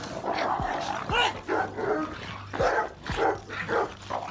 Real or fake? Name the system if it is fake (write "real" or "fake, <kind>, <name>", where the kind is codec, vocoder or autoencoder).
real